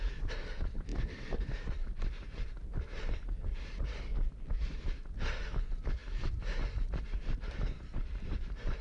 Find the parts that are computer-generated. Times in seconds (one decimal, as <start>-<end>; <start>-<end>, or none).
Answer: 0.0-0.9; 1.5-4.1; 5.6-8.8